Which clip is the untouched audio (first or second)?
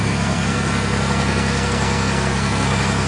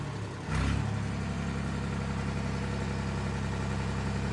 second